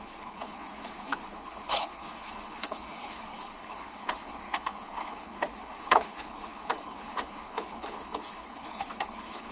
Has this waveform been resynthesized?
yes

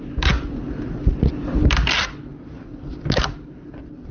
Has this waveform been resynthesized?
no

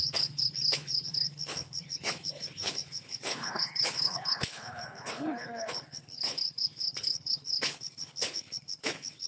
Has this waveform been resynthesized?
yes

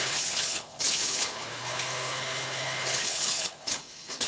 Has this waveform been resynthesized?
yes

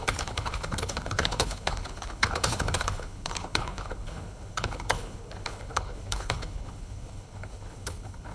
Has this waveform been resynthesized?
yes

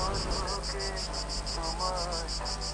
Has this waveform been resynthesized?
no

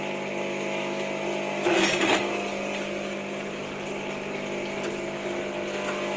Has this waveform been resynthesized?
no